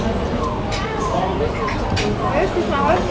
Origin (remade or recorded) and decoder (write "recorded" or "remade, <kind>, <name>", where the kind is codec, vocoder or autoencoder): recorded